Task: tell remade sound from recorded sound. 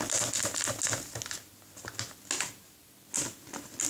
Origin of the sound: recorded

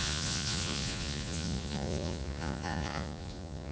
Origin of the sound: remade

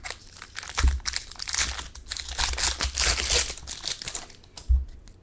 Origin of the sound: recorded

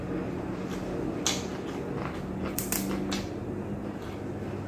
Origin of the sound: recorded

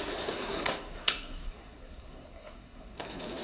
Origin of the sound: remade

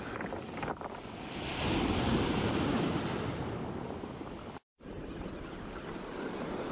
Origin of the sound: recorded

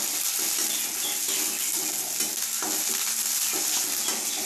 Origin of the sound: recorded